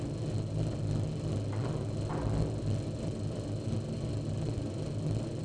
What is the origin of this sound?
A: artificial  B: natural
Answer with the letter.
B